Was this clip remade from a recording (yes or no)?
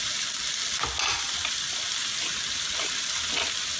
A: no